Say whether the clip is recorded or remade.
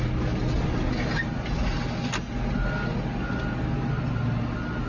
recorded